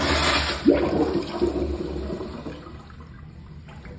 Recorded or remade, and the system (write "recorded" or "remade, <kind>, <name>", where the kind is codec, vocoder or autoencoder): recorded